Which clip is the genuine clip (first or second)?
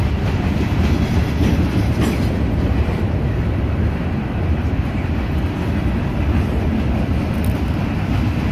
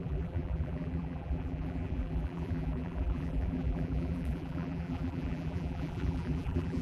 first